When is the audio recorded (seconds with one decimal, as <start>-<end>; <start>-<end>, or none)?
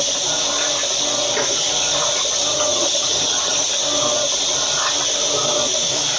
0.0-2.5; 3.7-6.2